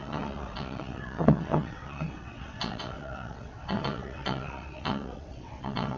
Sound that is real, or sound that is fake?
fake